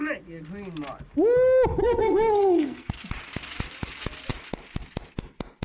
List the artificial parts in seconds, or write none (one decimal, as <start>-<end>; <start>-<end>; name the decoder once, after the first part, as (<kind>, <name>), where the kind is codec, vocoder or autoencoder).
1.8-3.1 (codec, SNAC)